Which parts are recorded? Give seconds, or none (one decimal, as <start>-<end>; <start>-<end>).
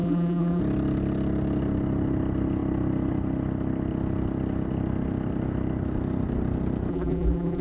0.6-6.9